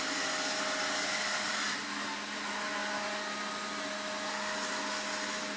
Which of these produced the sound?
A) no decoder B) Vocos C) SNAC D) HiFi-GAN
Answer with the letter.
A